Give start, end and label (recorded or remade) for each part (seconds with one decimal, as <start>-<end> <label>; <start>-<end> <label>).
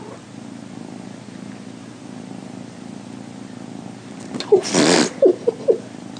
0.0-6.2 recorded